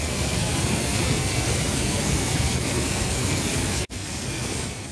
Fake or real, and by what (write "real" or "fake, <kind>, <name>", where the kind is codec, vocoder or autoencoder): fake, codec, SNAC